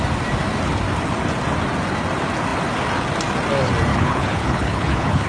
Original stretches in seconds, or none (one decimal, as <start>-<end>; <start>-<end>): 0.0-3.9